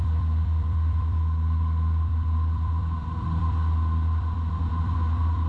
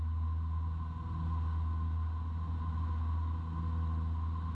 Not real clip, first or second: first